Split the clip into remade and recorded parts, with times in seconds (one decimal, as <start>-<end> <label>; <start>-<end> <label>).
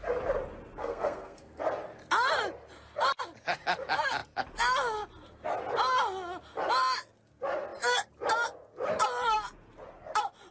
0.0-0.8 recorded; 0.8-1.6 remade; 1.6-10.5 recorded